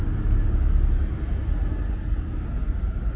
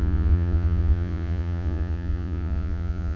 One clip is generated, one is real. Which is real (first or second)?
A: first